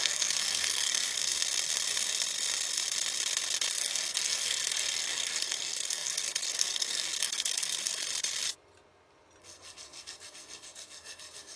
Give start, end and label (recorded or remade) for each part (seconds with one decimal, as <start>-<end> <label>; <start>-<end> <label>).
0.0-1.3 remade; 1.3-3.7 recorded; 3.7-8.1 remade; 8.1-9.4 recorded; 9.4-11.6 remade